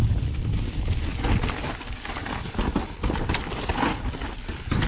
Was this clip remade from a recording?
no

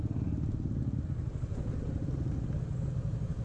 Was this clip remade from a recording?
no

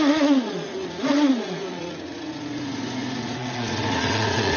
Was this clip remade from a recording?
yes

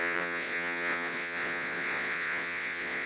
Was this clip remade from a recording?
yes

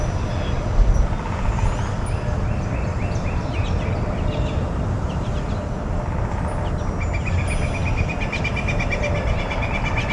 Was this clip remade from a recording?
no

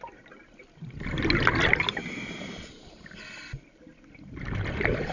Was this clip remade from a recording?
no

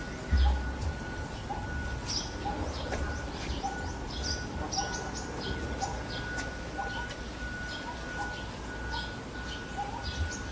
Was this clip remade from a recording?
no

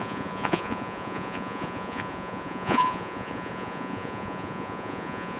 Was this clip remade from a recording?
yes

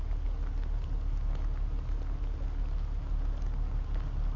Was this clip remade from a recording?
no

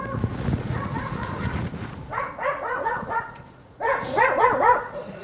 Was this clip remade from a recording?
yes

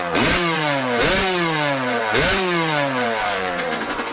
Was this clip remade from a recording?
yes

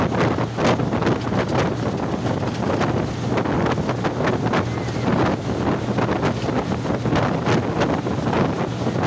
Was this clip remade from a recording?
no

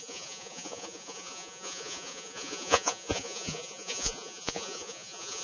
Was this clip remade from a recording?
yes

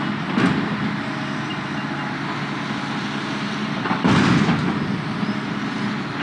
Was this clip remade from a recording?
no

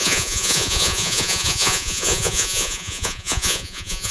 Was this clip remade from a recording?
yes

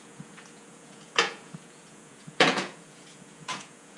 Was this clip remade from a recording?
yes